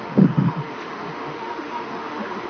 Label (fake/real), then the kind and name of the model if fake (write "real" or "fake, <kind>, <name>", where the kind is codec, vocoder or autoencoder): fake, autoencoder, DAC-VAE